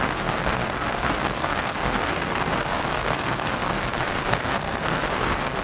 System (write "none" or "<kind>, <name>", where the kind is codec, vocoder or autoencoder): codec, SNAC